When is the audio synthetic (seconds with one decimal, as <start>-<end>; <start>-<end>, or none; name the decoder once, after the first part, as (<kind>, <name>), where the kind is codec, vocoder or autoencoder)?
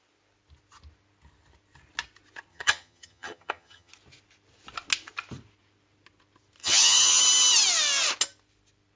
2.5-3.9 (vocoder, HiFi-GAN); 6.6-7.2